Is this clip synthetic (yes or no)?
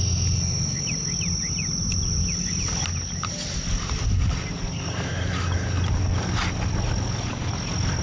no